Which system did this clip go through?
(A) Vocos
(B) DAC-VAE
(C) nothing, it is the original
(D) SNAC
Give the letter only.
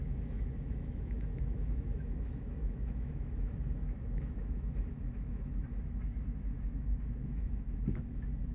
B